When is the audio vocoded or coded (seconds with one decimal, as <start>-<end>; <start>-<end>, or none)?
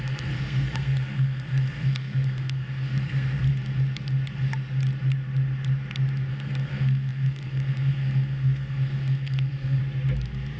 0.0-3.5; 6.3-9.8